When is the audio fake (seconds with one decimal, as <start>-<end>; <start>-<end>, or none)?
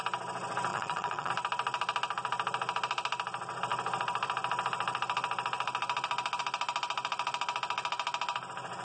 0.7-1.3